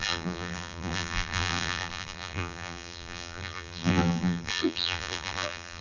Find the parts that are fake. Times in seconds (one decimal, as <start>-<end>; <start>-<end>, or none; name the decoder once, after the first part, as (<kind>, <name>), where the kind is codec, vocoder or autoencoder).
0.0-5.8 (vocoder, BigVGAN v2)